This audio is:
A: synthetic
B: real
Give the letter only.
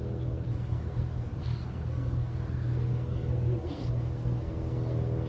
A